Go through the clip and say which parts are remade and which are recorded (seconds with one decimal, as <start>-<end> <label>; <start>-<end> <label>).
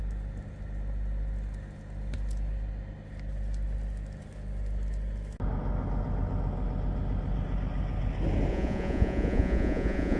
0.0-8.5 recorded; 8.5-10.2 remade